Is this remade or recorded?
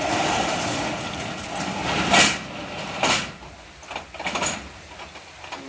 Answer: recorded